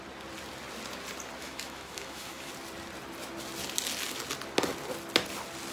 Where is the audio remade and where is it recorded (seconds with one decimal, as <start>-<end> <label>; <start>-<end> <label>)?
0.0-1.4 recorded; 1.4-2.5 remade; 2.5-5.7 recorded